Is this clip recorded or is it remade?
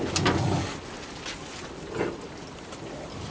recorded